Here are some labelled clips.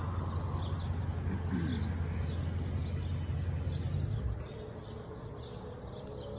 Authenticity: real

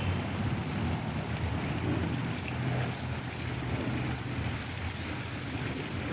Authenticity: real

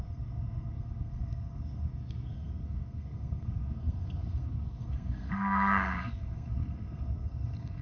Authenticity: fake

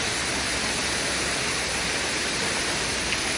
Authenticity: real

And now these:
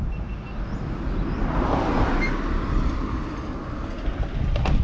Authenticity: real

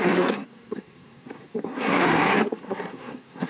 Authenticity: fake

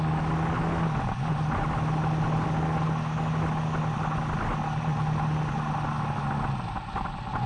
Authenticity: real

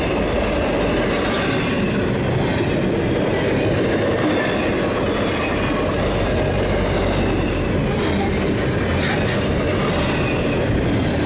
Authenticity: real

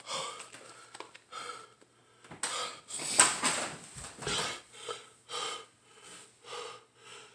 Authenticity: real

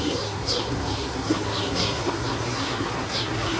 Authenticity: fake